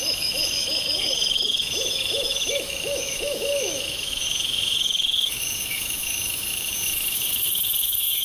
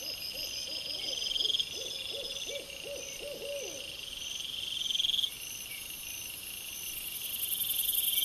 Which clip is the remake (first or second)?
first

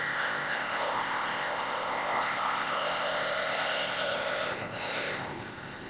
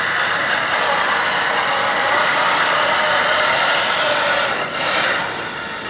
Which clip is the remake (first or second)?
first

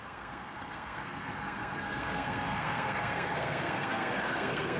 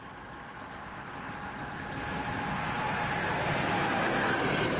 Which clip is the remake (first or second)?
first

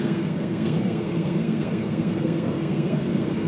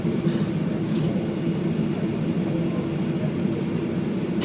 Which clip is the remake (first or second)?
first